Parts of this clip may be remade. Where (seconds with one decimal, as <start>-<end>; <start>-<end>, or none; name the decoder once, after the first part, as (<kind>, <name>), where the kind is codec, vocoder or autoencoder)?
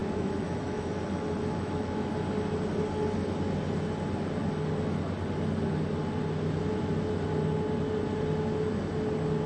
0.0-2.1 (autoencoder, DAC-VAE)